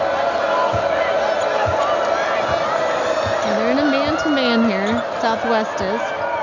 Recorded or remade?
recorded